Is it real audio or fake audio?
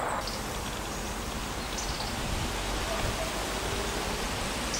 real